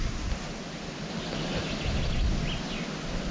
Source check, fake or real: real